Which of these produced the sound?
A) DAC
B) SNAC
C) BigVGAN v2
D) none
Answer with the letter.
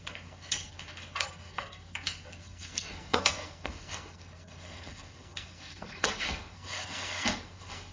B